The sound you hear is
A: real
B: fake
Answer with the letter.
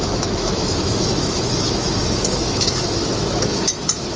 B